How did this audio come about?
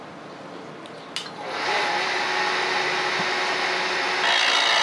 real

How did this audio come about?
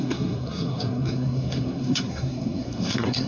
fake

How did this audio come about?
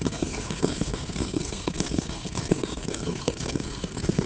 fake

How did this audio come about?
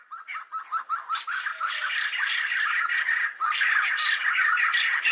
real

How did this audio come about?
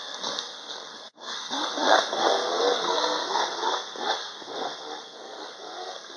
fake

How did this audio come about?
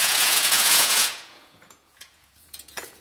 fake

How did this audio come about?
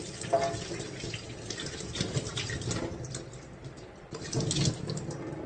real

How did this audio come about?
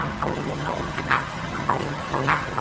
fake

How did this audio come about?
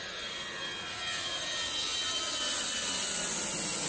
real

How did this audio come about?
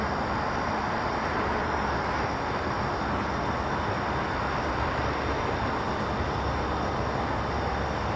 real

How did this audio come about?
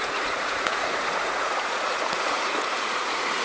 fake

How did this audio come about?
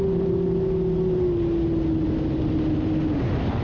real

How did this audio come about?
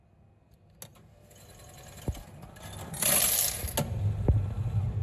real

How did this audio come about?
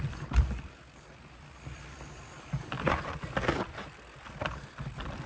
real